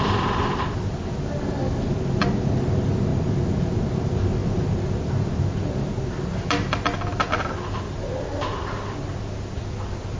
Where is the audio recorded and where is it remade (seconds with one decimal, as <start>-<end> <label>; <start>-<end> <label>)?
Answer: 0.0-10.2 recorded